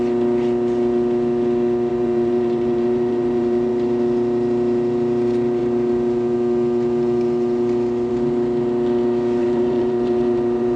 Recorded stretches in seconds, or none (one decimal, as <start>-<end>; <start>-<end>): 0.0-1.9; 3.7-9.4